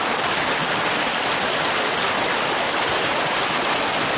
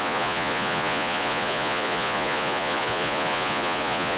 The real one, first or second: first